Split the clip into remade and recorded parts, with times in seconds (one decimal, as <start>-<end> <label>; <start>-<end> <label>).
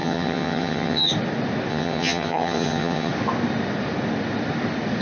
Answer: 0.0-1.1 remade; 1.1-1.7 recorded; 1.7-3.1 remade; 3.1-5.0 recorded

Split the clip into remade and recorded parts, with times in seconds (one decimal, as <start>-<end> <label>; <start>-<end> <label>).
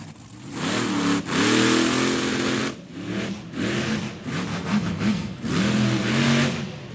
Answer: 0.0-4.5 recorded; 4.5-5.4 remade; 5.4-6.9 recorded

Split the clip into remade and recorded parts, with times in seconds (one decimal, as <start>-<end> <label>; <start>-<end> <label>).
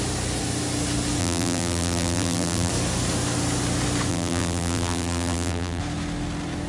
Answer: 0.0-1.2 recorded; 1.2-2.7 remade; 2.7-4.1 recorded; 4.1-5.8 remade; 5.8-6.7 recorded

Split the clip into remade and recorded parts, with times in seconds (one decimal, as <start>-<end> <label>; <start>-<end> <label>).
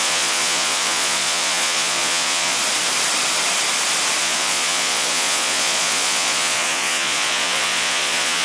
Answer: 0.0-2.6 remade; 2.6-4.2 recorded; 4.2-8.4 remade